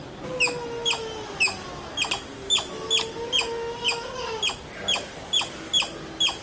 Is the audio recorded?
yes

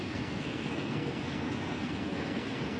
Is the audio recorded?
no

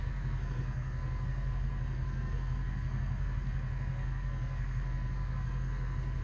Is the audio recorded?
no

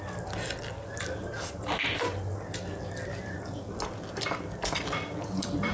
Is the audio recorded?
yes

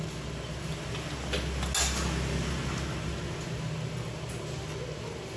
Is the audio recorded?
yes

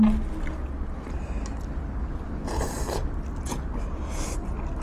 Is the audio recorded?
yes